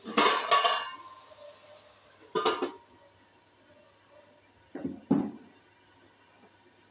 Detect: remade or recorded recorded